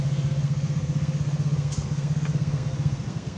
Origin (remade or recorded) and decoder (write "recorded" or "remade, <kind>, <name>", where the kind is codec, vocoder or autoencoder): remade, codec, SNAC